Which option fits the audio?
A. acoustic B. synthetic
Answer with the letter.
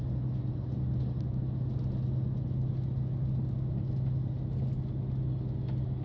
A